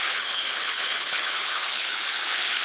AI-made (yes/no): yes